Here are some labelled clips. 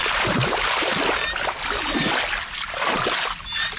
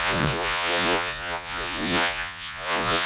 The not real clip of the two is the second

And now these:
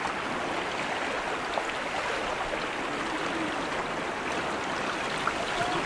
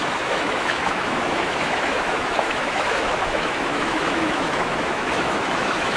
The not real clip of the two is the second